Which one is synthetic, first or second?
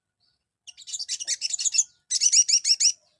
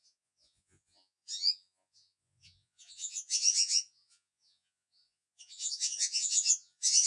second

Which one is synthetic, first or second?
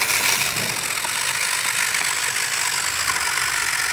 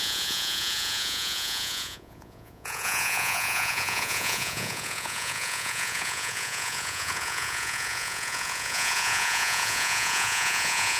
second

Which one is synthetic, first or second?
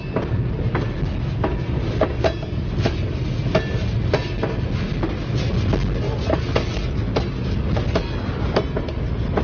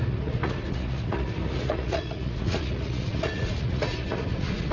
second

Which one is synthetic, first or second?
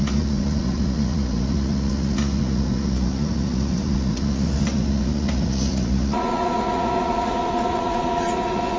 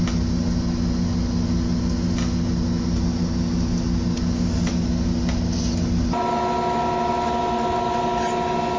first